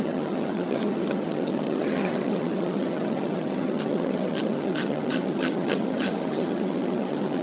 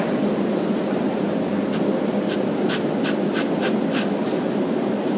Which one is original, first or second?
second